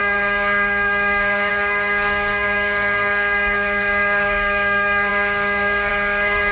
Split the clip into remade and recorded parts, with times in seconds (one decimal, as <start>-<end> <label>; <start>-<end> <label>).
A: 0.0-6.5 remade